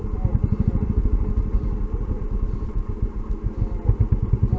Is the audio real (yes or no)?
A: yes